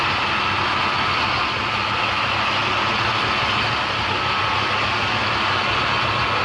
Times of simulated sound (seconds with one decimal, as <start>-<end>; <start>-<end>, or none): none